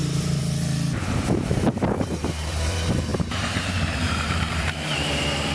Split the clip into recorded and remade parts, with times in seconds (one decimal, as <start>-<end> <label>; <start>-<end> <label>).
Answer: 0.0-0.4 remade; 0.4-1.0 recorded; 1.0-5.5 remade